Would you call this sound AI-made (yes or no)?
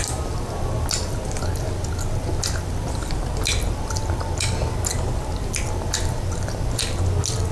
no